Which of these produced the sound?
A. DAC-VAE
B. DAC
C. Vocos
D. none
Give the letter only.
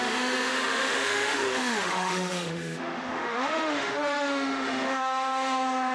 A